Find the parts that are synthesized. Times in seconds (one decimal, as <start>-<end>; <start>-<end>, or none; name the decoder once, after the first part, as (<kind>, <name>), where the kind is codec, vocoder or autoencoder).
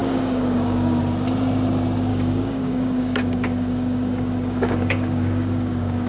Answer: 0.0-1.0 (codec, DAC); 2.1-6.1